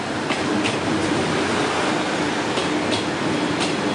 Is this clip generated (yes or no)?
no